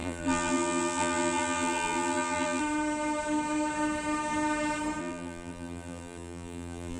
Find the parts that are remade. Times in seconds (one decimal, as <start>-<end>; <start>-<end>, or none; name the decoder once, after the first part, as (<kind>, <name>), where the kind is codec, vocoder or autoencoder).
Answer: 0.0-2.6 (vocoder, BigVGAN v2); 5.0-7.0